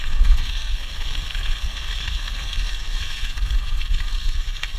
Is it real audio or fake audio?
fake